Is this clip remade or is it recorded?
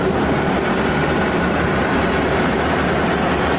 remade